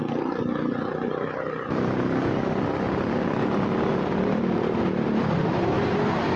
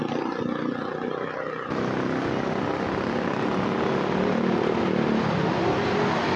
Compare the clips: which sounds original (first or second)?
second